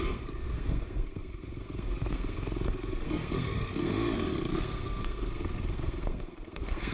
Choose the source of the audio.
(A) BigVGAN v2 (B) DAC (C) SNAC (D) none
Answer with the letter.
C